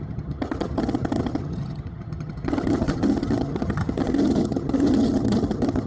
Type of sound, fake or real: fake